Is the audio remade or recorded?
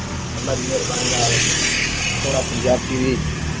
recorded